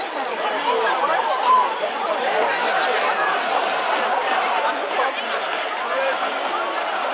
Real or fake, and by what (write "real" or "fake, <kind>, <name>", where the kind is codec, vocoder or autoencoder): fake, vocoder, BigVGAN v2